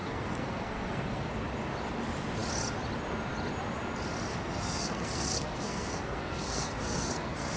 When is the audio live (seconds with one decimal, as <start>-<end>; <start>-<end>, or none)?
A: 1.3-4.3